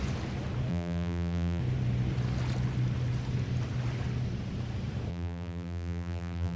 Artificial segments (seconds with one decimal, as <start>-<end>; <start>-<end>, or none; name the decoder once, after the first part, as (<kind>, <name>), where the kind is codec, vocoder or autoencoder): 0.7-1.6 (vocoder, BigVGAN v2); 5.1-6.6